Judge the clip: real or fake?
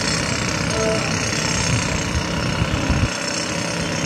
real